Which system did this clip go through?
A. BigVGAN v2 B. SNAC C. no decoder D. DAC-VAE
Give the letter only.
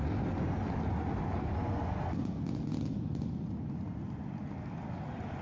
C